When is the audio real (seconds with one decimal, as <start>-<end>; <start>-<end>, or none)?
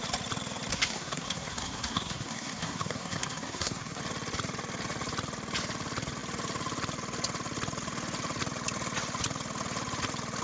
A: 0.0-0.7; 4.0-10.4